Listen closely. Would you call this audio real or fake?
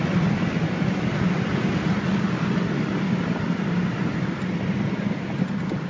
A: real